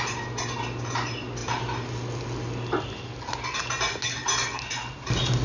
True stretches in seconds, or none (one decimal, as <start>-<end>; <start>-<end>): 0.0-5.4